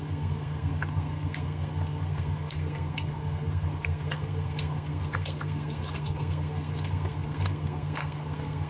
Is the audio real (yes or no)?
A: no